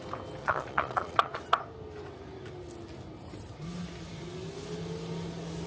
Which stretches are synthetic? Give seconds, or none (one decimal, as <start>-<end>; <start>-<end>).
0.4-1.4